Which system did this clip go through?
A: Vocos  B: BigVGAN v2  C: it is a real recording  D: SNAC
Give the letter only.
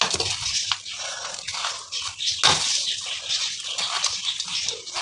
C